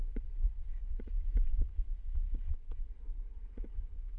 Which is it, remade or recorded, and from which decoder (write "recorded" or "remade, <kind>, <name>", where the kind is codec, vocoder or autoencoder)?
remade, vocoder, Vocos